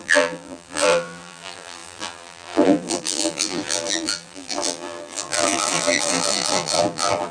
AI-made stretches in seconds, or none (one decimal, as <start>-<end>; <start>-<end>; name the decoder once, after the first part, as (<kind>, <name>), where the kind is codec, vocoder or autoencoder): 0.0-7.3 (vocoder, BigVGAN v2)